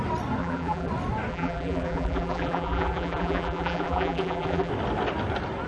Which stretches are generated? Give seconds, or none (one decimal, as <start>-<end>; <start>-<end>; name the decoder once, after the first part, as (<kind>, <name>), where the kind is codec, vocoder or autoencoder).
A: 0.4-0.9 (vocoder, BigVGAN v2); 1.3-4.7

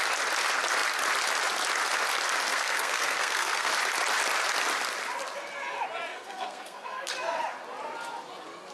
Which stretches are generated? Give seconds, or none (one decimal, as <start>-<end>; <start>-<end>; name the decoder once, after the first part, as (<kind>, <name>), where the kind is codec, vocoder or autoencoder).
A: 2.5-3.7 (codec, SNAC); 6.1-7.1

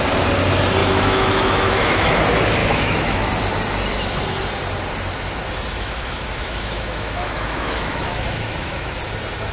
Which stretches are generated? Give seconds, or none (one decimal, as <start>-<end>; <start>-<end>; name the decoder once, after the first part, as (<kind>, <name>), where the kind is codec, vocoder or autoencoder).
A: 0.8-2.1 (autoencoder, DAC-VAE); 2.6-3.3; 5.7-9.0